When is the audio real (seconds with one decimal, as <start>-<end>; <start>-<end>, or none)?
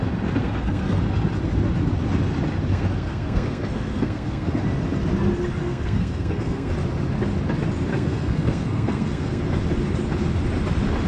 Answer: 0.0-0.4; 1.0-2.7; 4.6-5.6; 6.7-7.9; 9.4-11.1